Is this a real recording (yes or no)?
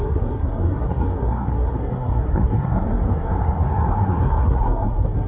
no